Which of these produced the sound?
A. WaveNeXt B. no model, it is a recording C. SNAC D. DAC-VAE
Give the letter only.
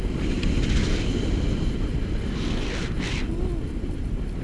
B